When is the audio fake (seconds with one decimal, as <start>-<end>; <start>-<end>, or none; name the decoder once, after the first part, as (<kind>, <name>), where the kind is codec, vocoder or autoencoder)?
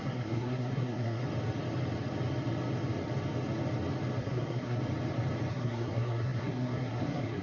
0.0-1.2 (codec, SNAC); 4.2-4.8; 5.5-7.4